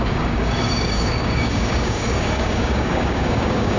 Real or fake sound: fake